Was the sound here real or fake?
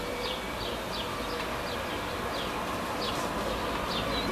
real